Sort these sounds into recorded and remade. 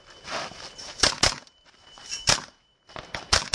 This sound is remade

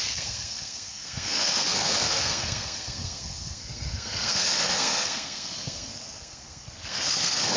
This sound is remade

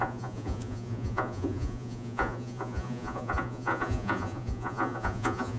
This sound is remade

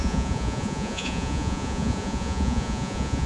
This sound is remade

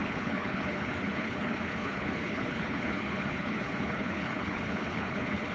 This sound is remade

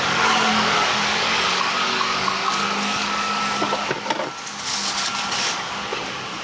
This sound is remade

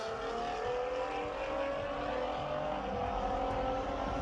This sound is recorded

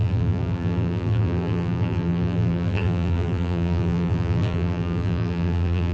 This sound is remade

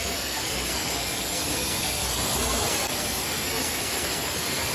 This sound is remade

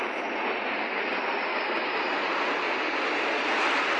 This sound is recorded